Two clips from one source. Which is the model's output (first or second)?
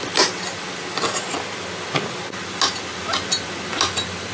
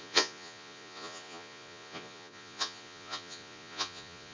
second